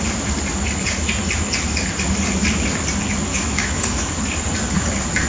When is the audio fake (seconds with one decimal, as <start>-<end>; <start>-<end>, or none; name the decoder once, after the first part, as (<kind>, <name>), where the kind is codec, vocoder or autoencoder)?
3.3-4.2 (autoencoder, DAC-VAE)